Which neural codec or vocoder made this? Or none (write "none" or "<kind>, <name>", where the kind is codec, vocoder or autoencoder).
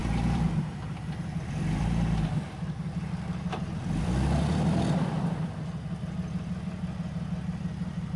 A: vocoder, BigVGAN v2